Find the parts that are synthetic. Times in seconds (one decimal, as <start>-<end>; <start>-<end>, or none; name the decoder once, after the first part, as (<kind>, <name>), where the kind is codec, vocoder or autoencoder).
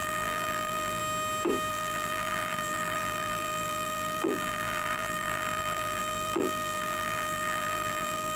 0.0-1.0 (vocoder, BigVGAN v2); 1.7-8.4